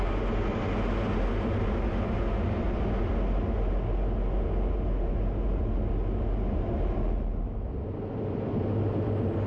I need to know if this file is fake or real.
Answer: real